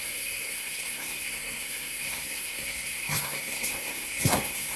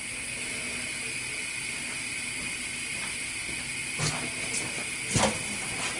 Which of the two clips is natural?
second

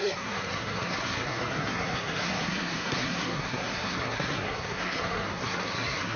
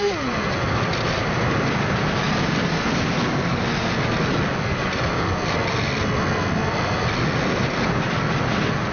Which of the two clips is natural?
second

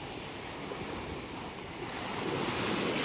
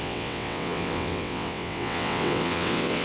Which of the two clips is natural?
first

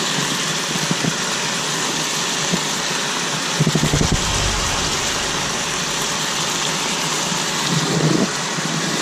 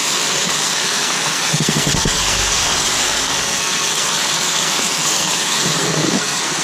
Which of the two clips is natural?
first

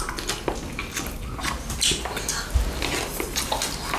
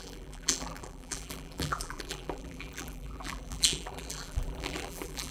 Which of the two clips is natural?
first